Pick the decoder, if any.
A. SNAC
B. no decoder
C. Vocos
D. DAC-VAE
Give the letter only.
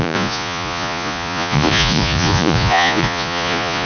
C